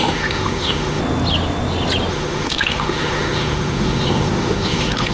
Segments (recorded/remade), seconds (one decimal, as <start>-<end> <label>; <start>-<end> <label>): 0.0-1.0 remade; 1.0-2.1 recorded; 2.1-5.1 remade